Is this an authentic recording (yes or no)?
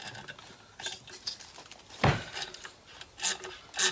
yes